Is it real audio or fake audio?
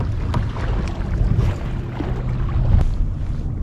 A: real